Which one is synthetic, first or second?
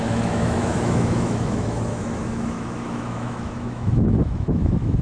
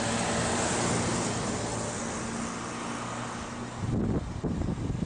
first